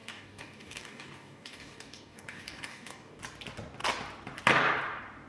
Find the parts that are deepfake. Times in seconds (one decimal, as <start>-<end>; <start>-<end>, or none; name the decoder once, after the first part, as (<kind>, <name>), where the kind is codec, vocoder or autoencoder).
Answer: 0.0-3.2 (codec, DAC)